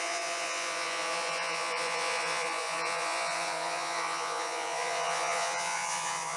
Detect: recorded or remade remade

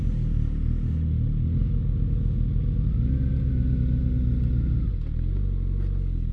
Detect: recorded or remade recorded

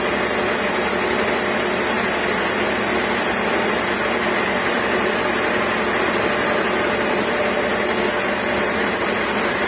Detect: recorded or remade recorded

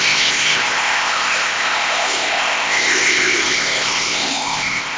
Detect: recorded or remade remade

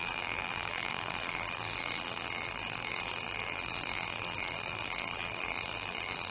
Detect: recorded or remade remade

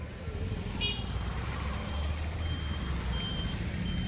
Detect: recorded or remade recorded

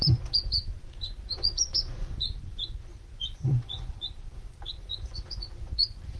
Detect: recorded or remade remade